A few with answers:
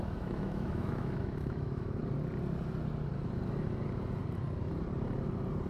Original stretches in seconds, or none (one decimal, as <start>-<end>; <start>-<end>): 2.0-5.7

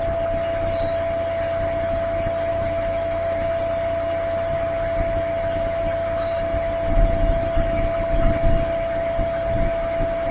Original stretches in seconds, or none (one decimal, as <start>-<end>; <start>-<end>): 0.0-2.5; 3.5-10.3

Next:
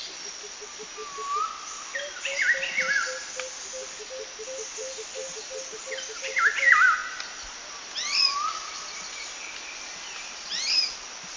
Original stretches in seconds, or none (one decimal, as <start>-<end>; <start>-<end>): 0.0-11.4